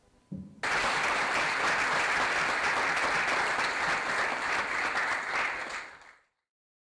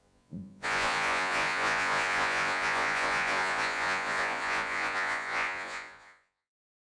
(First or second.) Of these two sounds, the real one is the first